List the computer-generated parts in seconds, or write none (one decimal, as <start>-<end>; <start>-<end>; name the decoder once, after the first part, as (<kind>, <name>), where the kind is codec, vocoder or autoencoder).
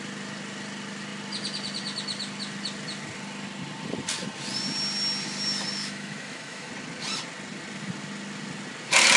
5.8-6.7 (autoencoder, DAC-VAE)